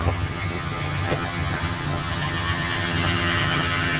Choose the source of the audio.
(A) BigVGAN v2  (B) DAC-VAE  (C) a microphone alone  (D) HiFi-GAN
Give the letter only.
D